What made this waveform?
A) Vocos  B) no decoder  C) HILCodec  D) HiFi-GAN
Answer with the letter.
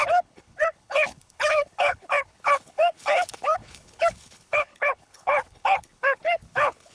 C